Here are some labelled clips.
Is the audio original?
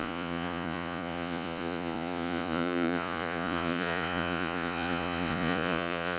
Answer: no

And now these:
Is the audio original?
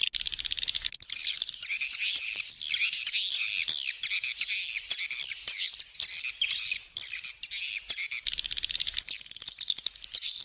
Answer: yes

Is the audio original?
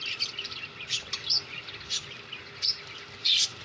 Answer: yes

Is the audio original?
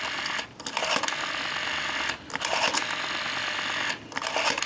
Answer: yes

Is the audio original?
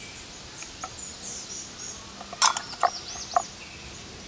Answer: yes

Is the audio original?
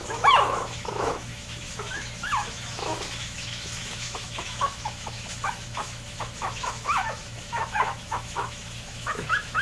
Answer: no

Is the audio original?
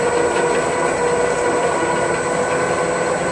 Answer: yes